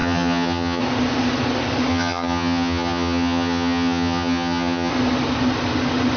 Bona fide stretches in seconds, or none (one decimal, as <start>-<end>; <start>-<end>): 0.8-1.9; 4.9-6.2